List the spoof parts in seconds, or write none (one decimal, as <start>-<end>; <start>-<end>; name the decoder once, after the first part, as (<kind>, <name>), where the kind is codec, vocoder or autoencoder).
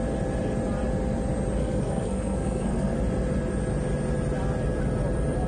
1.6-3.0 (codec, SNAC)